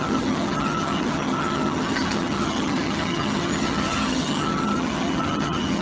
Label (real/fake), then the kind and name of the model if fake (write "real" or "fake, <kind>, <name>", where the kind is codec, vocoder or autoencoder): fake, vocoder, HiFi-GAN